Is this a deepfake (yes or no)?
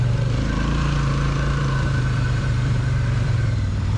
yes